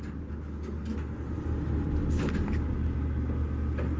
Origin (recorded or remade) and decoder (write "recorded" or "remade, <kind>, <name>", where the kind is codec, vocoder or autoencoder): recorded